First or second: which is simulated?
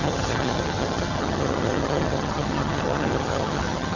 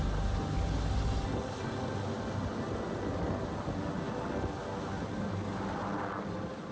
first